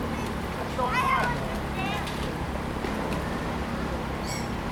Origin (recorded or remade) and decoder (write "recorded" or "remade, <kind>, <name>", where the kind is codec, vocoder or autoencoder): remade, vocoder, BigVGAN v2